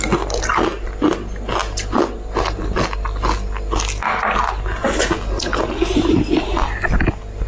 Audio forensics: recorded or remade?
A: recorded